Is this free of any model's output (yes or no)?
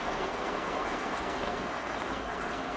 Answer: no